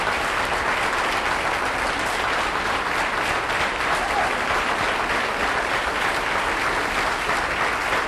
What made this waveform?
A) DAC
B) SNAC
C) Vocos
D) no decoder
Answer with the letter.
D